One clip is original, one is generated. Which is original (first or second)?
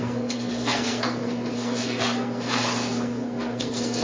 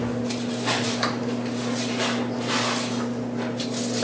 second